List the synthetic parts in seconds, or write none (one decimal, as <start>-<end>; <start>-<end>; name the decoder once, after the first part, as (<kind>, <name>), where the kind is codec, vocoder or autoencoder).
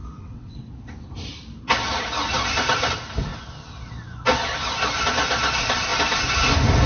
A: 0.0-0.7 (vocoder, WaveNeXt)